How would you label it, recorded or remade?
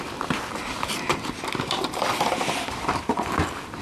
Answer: remade